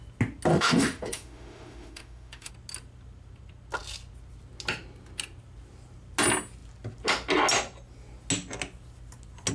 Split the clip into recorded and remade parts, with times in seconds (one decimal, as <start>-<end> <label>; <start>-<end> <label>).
0.0-0.5 recorded; 0.5-2.5 remade; 2.5-9.5 recorded